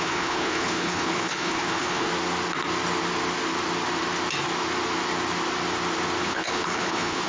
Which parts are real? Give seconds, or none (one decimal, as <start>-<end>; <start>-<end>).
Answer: 2.1-6.2